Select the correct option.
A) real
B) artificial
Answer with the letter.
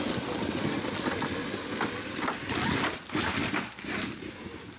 A